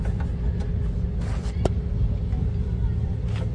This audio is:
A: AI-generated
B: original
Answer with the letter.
B